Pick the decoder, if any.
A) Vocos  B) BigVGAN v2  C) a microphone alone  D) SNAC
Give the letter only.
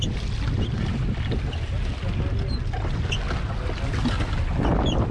C